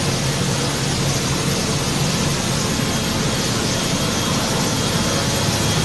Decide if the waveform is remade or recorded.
recorded